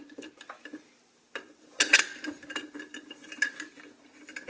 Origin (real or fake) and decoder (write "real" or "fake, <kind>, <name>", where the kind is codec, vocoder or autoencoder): real